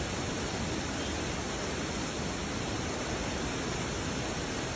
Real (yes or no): yes